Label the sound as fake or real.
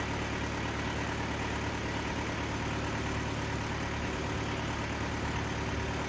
real